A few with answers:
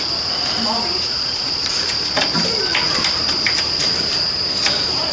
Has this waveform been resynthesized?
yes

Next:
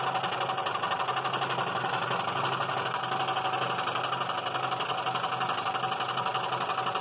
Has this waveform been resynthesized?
no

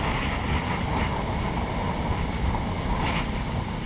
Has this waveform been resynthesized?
no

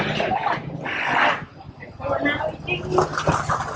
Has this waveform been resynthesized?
no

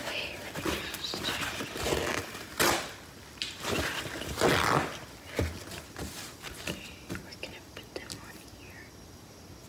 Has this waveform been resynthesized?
no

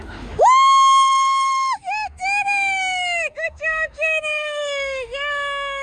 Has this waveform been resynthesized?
yes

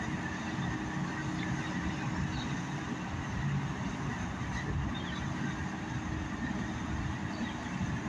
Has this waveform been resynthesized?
no